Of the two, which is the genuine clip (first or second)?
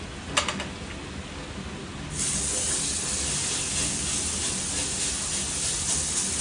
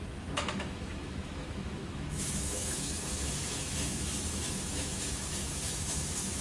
first